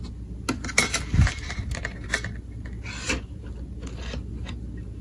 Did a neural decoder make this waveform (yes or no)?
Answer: no